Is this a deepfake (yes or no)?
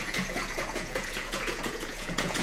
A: yes